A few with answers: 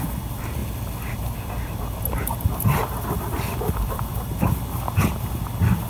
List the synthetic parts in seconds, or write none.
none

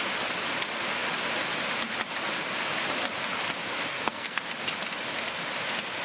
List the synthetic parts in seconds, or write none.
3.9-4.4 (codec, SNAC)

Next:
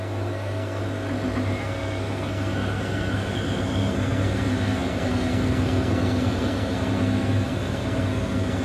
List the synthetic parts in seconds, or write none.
0.0-0.8 (codec, SNAC); 1.6-8.6